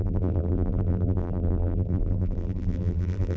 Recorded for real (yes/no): no